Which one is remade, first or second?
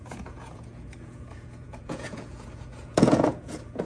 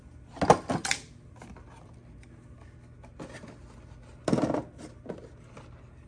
first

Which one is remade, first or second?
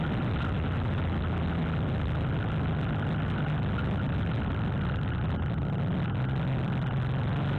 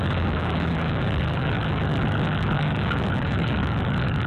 second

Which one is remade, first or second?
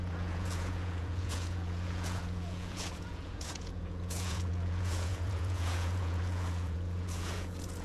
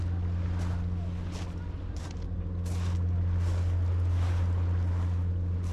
first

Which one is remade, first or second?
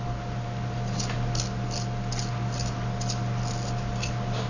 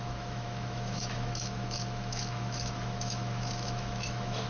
second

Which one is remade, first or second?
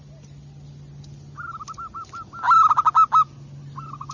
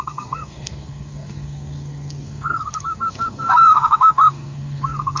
second